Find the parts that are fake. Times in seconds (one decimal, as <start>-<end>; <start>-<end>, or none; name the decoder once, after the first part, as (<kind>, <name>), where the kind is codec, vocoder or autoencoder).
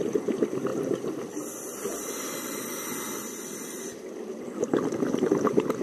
none